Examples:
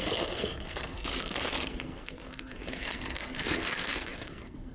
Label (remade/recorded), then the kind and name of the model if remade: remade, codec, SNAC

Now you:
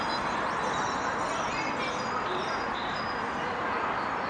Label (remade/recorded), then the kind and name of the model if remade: recorded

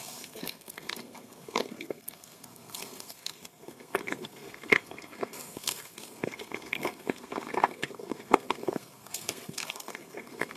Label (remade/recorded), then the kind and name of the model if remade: remade, codec, SNAC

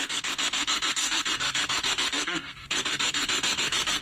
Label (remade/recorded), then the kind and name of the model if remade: remade, codec, SNAC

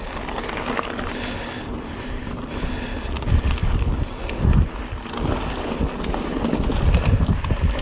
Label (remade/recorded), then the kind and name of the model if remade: recorded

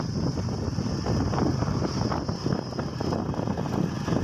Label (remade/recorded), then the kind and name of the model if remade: recorded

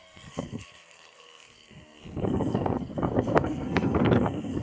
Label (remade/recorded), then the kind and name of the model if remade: remade, codec, SNAC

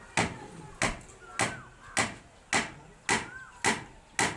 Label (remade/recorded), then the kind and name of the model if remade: recorded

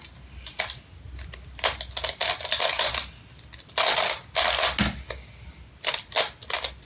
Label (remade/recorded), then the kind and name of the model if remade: recorded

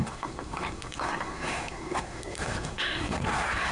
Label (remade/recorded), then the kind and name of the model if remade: remade, codec, SNAC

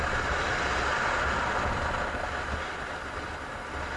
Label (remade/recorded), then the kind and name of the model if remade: recorded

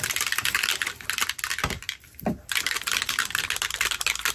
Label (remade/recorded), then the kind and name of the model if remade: recorded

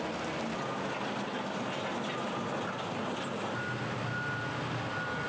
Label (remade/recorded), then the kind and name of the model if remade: recorded